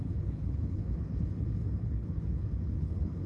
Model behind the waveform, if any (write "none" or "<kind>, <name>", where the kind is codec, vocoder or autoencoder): codec, HILCodec